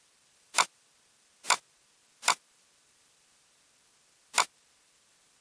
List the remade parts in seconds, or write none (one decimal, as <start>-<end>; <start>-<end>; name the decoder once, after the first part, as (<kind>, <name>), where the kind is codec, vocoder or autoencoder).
none

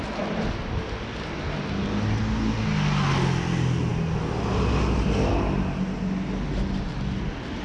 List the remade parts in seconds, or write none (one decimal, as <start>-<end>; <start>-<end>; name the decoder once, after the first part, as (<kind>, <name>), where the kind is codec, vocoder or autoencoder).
none

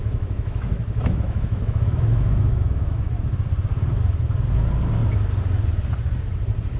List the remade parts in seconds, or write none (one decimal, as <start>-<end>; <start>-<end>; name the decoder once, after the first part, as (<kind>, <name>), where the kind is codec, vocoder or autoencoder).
0.0-3.1 (autoencoder, DAC-VAE)

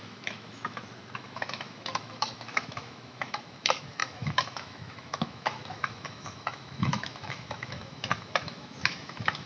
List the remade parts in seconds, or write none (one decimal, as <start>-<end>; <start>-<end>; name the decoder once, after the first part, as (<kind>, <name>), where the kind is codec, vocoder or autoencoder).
0.0-9.5 (autoencoder, DAC-VAE)

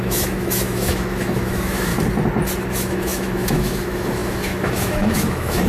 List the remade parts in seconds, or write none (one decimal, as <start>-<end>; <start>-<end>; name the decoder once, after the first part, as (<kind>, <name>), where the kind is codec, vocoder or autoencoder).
0.0-1.9 (autoencoder, DAC-VAE); 2.7-5.7

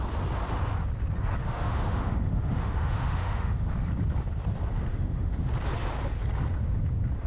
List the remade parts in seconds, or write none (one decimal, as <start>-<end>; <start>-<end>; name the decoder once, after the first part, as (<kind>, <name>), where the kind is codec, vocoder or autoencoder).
1.4-3.7 (autoencoder, DAC-VAE); 4.9-5.5

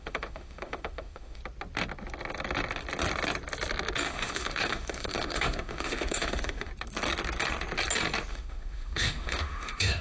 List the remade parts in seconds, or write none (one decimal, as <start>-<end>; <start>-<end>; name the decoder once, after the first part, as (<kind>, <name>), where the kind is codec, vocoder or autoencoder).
0.0-1.4 (autoencoder, DAC-VAE); 4.0-6.7; 8.3-10.0

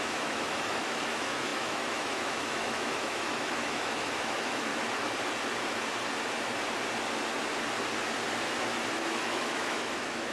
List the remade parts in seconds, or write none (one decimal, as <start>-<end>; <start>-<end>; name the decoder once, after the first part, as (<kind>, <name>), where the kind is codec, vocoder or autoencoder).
0.0-4.7 (autoencoder, DAC-VAE); 8.9-10.3